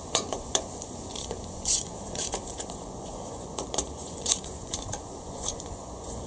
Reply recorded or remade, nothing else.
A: remade